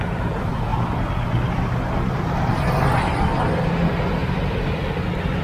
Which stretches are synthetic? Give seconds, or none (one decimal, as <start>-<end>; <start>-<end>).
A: 4.2-4.8